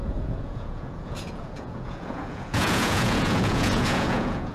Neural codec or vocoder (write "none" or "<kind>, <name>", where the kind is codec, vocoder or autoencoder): vocoder, Vocos